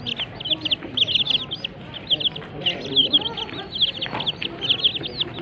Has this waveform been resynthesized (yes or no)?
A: no